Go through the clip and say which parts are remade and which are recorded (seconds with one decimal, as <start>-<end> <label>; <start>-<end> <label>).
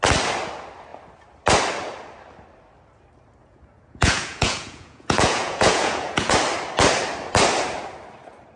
0.0-3.4 recorded; 3.4-6.3 remade; 6.3-8.6 recorded